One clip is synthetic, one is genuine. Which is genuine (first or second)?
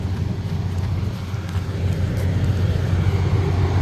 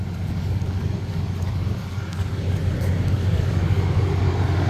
first